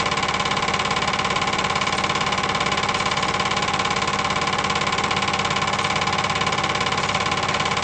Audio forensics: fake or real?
real